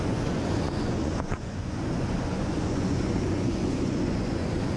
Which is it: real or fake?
fake